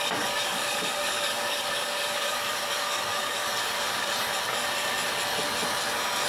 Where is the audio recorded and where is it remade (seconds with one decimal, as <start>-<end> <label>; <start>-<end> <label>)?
0.0-4.1 remade; 4.1-6.3 recorded